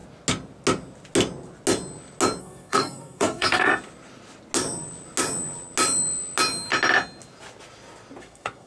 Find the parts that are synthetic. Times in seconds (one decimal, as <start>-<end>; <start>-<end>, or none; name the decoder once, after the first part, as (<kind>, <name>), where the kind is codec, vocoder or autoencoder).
2.4-3.7 (codec, SNAC); 8.2-8.7